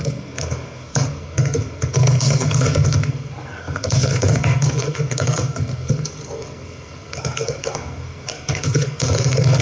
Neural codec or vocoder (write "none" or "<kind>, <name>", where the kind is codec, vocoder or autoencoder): codec, SNAC